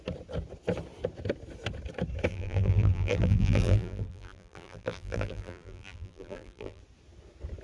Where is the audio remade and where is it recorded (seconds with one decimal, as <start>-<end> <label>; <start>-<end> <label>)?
0.0-2.3 recorded; 2.3-6.8 remade; 6.8-7.6 recorded